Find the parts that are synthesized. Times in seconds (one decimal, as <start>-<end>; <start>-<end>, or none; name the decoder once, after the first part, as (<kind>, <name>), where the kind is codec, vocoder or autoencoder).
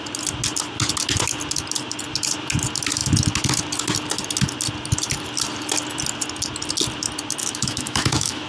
7.4-8.5 (autoencoder, DAC-VAE)